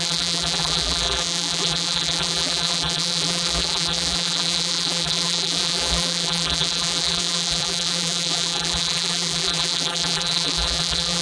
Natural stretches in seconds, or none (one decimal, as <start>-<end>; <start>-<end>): none